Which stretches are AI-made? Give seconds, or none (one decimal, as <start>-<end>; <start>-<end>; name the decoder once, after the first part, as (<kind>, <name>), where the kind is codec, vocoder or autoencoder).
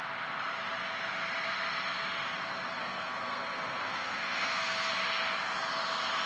2.8-4.9 (codec, SNAC)